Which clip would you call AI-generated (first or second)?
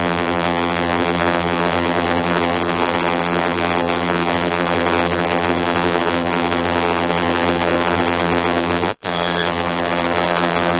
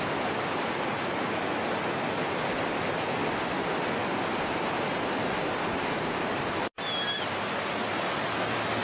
first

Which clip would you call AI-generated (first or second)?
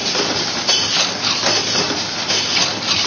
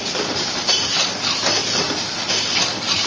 second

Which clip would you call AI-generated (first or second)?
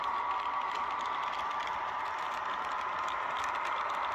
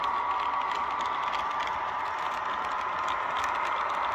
first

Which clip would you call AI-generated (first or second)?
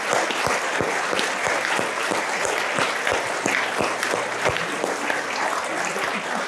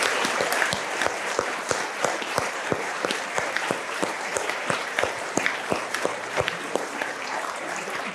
second